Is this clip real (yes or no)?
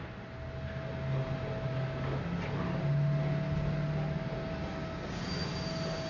yes